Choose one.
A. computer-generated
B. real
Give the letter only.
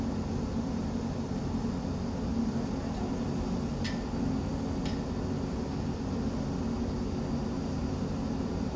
B